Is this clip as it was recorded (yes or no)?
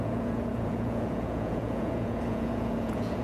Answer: no